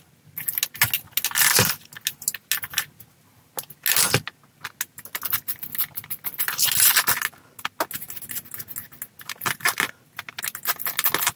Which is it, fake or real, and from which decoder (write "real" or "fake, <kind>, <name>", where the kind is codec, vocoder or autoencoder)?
real